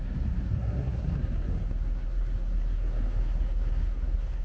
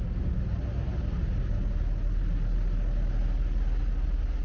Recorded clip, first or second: second